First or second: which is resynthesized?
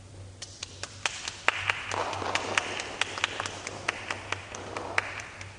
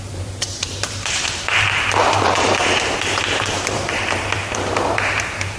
second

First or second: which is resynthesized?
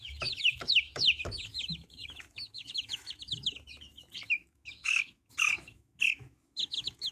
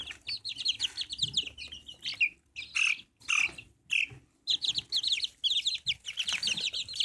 first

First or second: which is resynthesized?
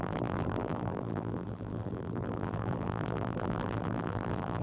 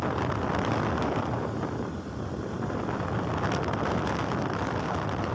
first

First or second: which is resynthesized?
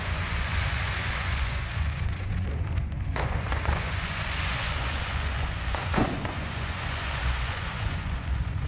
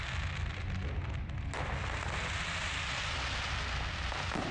first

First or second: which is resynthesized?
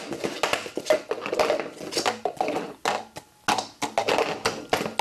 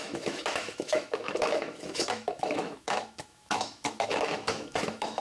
second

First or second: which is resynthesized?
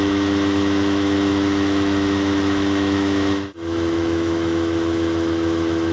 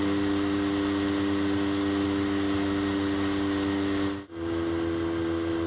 first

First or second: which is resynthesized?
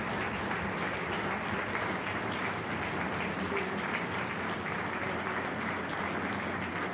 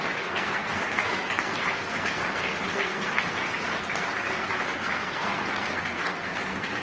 second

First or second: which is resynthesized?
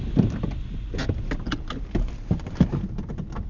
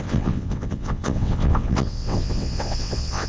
second